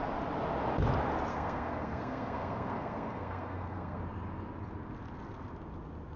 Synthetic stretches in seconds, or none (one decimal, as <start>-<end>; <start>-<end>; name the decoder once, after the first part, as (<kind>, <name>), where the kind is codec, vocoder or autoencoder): 1.3-4.0 (codec, SNAC)